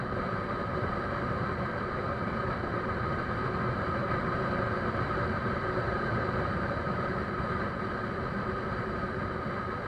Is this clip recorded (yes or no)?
no